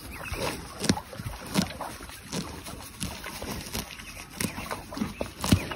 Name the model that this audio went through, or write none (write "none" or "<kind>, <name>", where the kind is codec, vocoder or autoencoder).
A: none